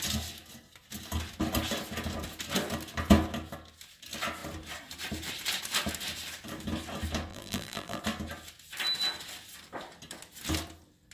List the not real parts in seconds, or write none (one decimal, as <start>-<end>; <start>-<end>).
7.3-8.0